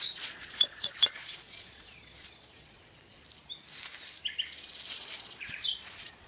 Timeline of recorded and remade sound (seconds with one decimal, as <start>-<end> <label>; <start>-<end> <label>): 0.0-3.2 remade; 3.2-4.8 recorded; 4.8-6.3 remade